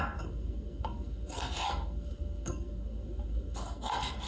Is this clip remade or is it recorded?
remade